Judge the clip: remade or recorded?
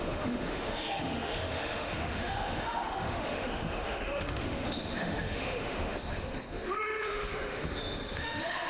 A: remade